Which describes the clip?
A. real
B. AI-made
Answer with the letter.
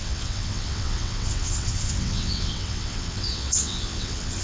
B